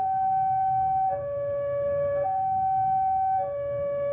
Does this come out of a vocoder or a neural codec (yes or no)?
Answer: yes